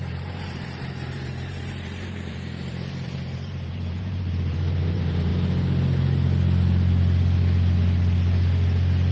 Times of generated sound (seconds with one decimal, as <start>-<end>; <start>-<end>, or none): 0.0-5.3